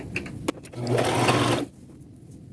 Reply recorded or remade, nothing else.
recorded